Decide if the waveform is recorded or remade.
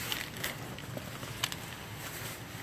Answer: recorded